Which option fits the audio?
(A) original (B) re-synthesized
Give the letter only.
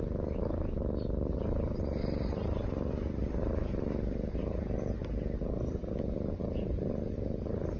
A